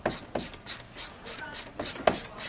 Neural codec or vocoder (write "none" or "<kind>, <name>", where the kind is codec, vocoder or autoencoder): none